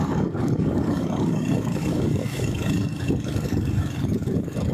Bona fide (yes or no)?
no